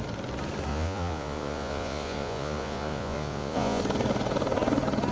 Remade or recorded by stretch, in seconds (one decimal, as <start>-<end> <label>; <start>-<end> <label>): 0.0-0.7 recorded; 0.7-3.8 remade; 3.8-5.1 recorded